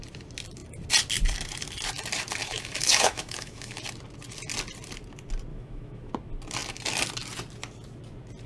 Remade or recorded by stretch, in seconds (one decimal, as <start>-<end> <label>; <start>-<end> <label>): 0.0-2.4 recorded; 2.4-3.8 remade; 3.8-5.5 recorded; 5.5-6.1 remade; 6.1-8.5 recorded

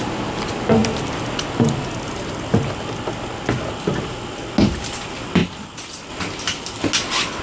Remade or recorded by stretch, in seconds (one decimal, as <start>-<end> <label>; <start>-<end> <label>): 0.0-7.4 recorded

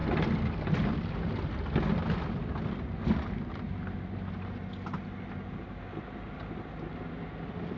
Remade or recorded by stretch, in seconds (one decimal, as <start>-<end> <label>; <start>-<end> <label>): 0.0-7.8 recorded

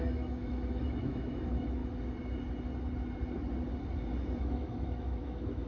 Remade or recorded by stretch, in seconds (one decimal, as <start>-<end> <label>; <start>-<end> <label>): 0.0-1.8 remade; 1.8-4.4 recorded; 4.4-5.7 remade

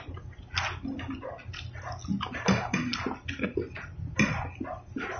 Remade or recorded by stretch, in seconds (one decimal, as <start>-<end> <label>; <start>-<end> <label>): 0.0-5.2 recorded